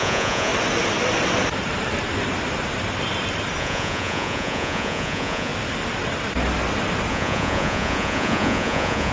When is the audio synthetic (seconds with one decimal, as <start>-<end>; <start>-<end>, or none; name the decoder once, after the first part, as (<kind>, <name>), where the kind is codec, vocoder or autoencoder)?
0.0-0.5 (vocoder, Vocos); 3.6-5.5; 7.1-9.1

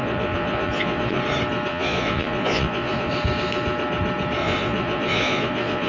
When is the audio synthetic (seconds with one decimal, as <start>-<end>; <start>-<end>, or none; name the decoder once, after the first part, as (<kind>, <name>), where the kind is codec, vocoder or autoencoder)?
0.0-1.2 (vocoder, Vocos); 1.7-3.1; 4.4-5.9